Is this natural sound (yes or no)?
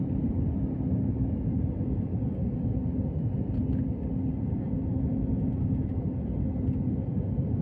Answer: yes